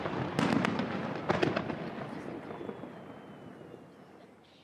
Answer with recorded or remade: recorded